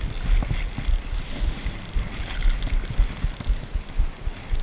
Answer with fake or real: real